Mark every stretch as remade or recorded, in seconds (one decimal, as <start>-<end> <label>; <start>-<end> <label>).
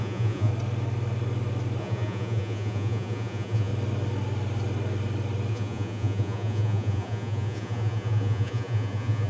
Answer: 0.0-0.5 remade; 0.5-1.8 recorded; 1.8-3.7 remade; 3.7-5.5 recorded; 5.5-9.3 remade